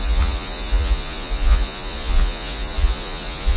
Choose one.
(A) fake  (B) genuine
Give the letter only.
A